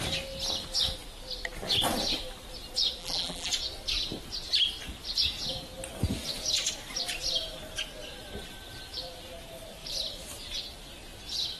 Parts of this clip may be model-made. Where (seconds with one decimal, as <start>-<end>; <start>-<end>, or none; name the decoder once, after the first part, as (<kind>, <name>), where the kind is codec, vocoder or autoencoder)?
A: 3.0-3.5 (vocoder, BigVGAN v2)